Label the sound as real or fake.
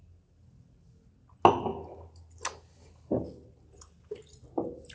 real